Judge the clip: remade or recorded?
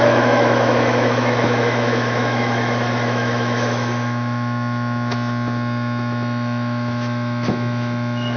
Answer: remade